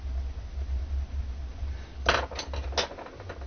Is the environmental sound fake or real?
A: real